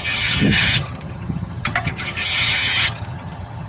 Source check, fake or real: fake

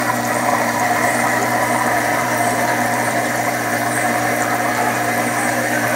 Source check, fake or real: fake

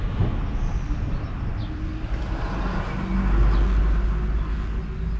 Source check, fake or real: real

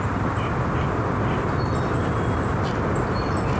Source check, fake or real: real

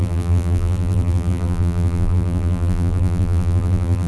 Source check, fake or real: fake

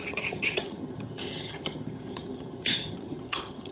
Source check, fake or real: fake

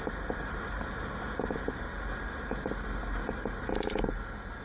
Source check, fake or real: real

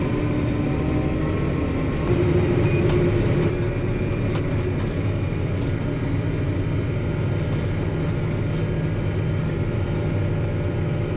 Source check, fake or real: real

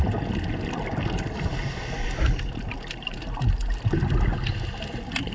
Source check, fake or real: real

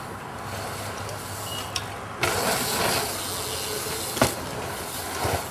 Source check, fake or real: real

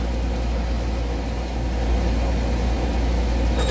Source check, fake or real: real